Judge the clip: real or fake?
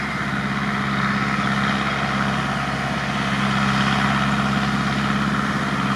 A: real